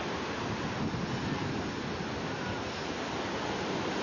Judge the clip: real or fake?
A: real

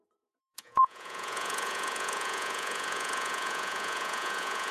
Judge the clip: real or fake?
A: fake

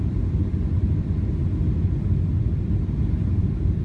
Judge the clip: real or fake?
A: real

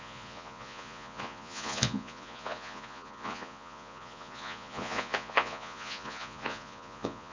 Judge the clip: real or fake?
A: fake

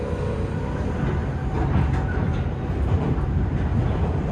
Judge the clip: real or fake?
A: real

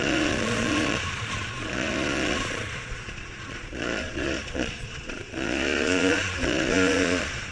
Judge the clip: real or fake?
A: fake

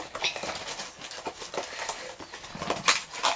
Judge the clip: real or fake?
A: real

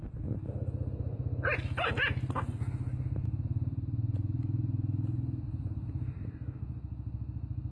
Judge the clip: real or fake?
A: real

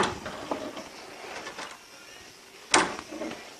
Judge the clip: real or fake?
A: real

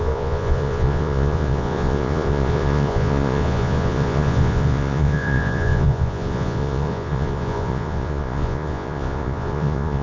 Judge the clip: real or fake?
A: fake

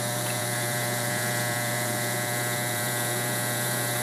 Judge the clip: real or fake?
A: fake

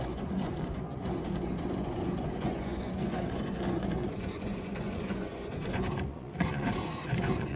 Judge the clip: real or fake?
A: fake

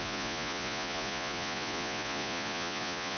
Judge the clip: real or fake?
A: fake